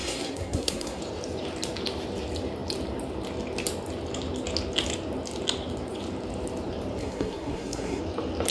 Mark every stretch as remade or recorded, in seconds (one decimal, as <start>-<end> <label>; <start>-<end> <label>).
0.0-1.0 remade; 1.0-7.0 recorded; 7.0-8.0 remade; 8.0-8.5 recorded